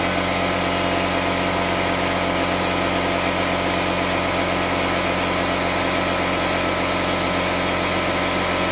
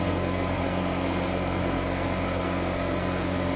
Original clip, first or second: first